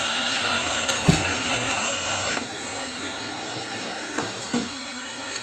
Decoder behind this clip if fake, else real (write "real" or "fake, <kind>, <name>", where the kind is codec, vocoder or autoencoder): fake, codec, SNAC